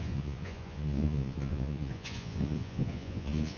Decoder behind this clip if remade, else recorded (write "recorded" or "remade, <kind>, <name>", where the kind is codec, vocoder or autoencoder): remade, vocoder, Vocos